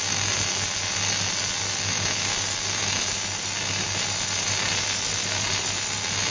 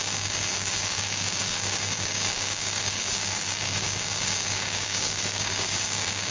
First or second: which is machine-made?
second